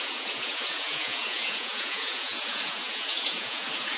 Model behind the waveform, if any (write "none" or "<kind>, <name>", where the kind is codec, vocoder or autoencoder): vocoder, Vocos